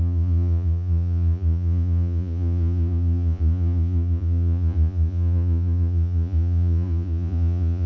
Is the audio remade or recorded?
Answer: remade